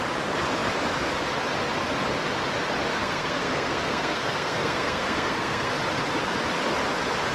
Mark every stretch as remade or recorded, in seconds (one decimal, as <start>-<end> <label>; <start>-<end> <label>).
0.0-2.9 recorded; 2.9-5.7 remade; 5.7-7.3 recorded